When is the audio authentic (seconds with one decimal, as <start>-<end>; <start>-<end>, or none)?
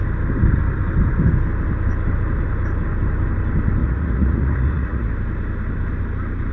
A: 0.0-3.8; 5.1-6.5